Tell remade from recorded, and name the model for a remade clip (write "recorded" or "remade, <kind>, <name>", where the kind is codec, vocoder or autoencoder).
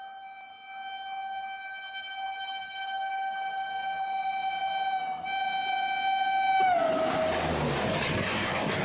recorded